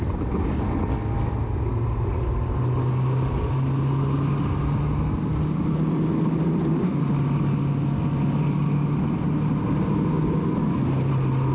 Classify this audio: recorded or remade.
recorded